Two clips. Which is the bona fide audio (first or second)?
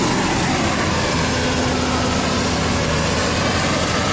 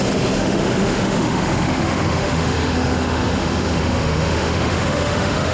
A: first